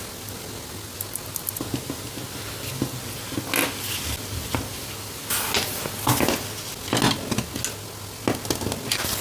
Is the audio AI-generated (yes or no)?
no